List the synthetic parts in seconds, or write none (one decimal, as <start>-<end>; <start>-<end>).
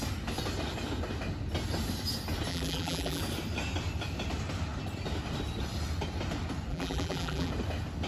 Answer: 2.5-3.2; 6.7-7.5